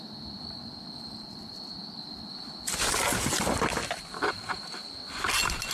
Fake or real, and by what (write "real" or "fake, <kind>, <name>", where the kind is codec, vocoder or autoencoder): real